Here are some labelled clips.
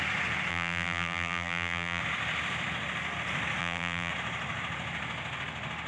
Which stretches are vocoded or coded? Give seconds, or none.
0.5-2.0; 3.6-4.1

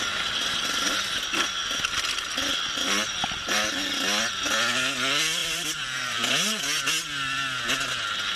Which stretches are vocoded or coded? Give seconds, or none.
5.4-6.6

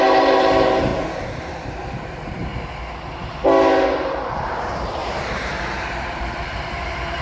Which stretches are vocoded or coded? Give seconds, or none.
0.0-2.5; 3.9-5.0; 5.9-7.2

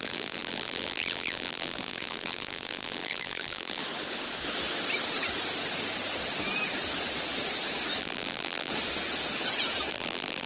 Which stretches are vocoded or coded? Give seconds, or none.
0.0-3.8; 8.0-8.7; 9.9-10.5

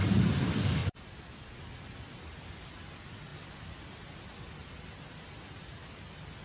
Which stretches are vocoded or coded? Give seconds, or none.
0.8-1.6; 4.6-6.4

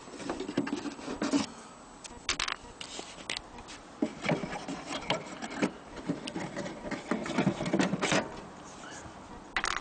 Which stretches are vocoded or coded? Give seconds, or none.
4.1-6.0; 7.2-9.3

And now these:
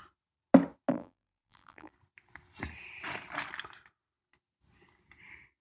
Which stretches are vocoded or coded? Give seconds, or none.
0.9-1.9

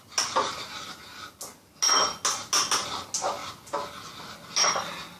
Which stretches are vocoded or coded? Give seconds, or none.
none